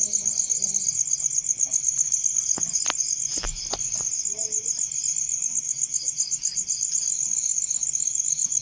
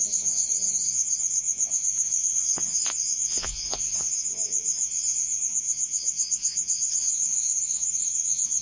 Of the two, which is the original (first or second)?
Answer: first